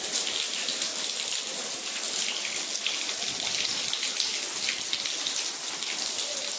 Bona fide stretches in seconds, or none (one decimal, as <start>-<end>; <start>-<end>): 0.0-6.6